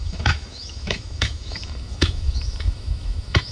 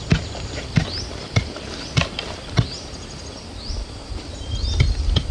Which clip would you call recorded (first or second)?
second